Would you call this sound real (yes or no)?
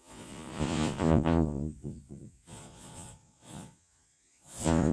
no